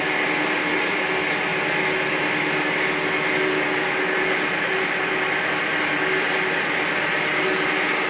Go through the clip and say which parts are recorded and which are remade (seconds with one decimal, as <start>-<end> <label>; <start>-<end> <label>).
0.0-8.1 recorded

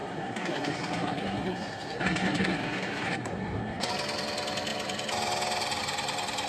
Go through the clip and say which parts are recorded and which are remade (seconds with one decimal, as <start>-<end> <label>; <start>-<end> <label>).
0.0-3.9 remade; 3.9-6.5 recorded

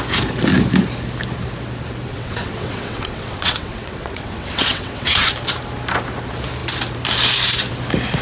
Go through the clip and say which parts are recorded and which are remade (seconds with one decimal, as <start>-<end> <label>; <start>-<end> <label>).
0.0-2.1 recorded; 2.1-5.3 remade; 5.3-8.2 recorded

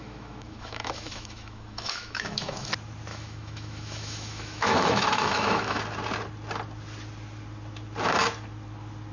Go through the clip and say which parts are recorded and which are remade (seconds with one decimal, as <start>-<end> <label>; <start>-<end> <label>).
0.0-2.7 remade; 2.7-3.1 recorded; 3.1-5.8 remade; 5.8-9.1 recorded

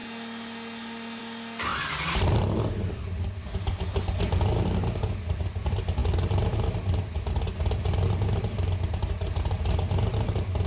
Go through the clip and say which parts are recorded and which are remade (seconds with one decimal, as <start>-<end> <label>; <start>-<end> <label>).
0.0-10.7 recorded

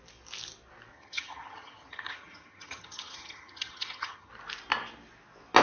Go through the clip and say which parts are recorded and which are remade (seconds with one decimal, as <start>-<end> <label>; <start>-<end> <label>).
0.0-0.9 recorded; 0.9-4.3 remade; 4.3-5.6 recorded

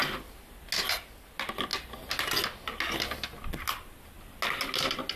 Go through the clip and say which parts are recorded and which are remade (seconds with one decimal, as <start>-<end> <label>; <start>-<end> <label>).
0.0-5.2 recorded

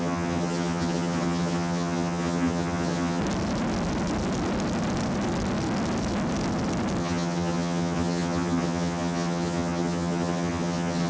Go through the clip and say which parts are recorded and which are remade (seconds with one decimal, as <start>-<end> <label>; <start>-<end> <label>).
0.0-3.2 remade; 3.2-7.0 recorded; 7.0-11.1 remade